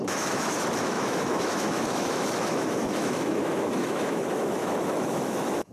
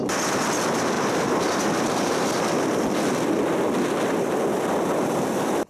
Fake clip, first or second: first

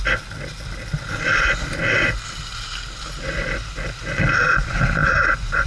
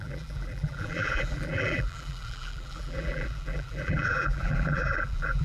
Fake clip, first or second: second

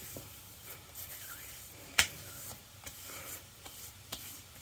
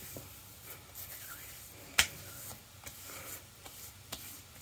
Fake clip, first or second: first